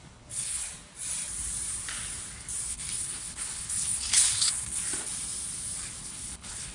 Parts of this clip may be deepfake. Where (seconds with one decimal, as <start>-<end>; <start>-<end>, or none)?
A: 0.0-0.6; 2.7-4.8; 6.0-6.7

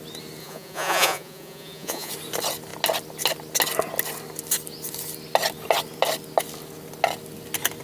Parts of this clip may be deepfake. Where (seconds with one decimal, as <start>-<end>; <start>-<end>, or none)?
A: 0.4-2.1

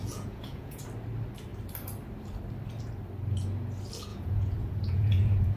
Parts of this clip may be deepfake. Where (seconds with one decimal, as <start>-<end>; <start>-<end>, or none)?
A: 0.0-0.8; 4.1-5.6